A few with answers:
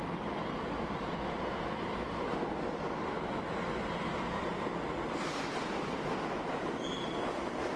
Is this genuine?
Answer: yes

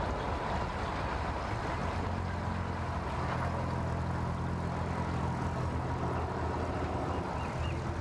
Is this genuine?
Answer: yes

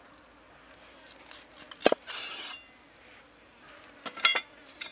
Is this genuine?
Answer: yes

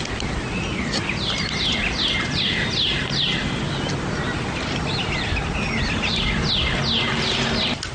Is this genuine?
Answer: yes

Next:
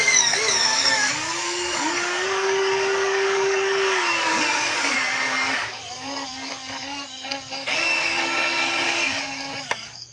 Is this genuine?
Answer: no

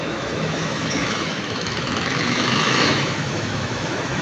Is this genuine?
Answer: no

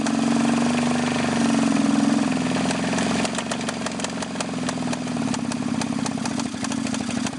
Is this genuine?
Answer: yes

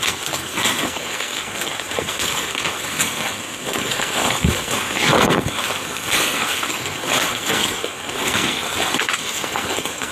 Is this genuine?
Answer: no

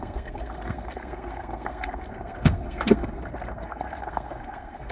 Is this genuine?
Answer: no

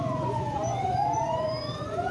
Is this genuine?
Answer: no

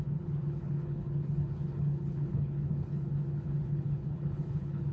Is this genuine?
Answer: no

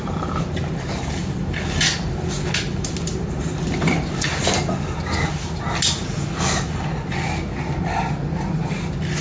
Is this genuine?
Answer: yes